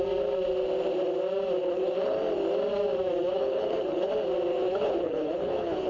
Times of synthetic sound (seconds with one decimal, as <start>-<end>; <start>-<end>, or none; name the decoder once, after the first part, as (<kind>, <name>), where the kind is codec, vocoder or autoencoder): 1.6-2.2 (codec, HILCodec); 3.3-4.1; 4.5-5.9